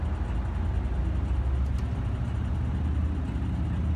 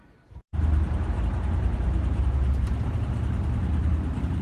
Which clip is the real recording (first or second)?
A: first